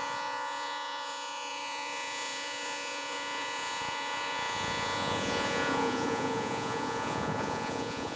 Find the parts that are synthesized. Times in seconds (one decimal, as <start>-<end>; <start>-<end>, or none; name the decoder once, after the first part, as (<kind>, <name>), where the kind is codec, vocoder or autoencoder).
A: 0.0-8.2 (vocoder, Vocos)